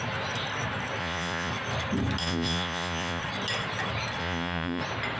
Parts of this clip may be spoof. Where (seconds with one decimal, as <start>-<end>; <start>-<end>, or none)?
1.0-1.5; 2.2-3.2; 4.2-4.8